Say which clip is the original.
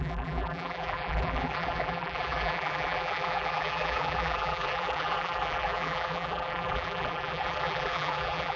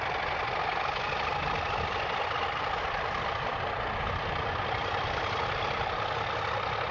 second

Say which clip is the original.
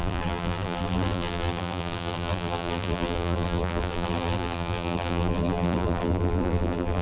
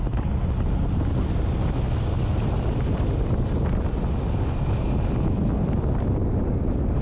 second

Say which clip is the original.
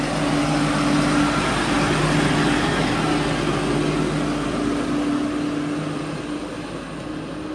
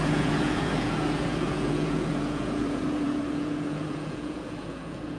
first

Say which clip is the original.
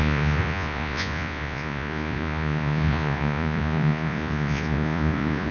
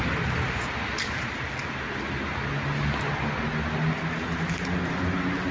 second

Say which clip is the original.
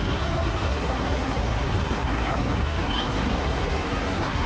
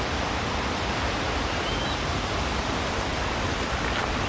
second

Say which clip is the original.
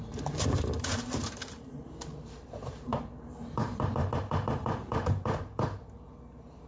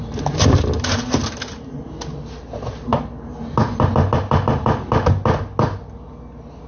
second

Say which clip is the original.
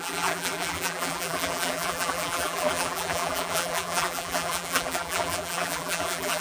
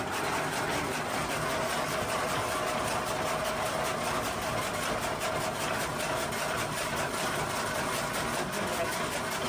second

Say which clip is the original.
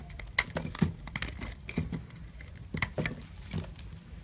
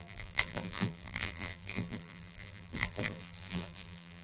first